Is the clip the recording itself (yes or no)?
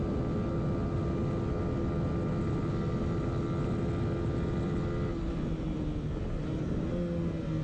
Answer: yes